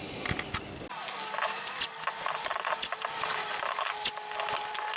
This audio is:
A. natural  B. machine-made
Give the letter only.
A